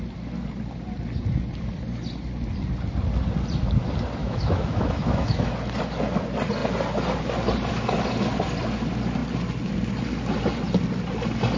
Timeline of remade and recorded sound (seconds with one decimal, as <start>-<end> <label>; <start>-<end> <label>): 0.0-4.2 recorded; 4.2-5.5 remade; 5.5-11.6 recorded